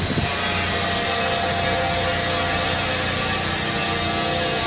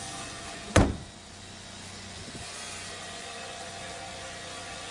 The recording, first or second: first